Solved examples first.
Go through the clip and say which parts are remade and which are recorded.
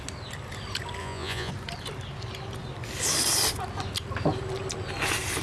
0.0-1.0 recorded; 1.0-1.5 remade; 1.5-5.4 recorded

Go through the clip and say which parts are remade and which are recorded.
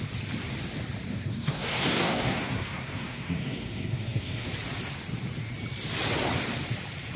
0.0-1.1 recorded; 1.1-4.5 remade; 4.5-7.2 recorded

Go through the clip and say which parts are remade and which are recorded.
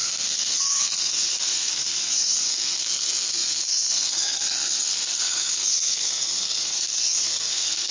0.0-7.9 remade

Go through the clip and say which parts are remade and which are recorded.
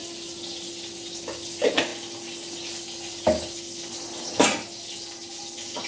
0.0-5.9 recorded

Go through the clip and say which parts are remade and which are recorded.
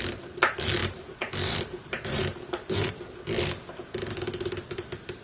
0.0-0.8 recorded; 0.8-2.9 remade; 2.9-5.2 recorded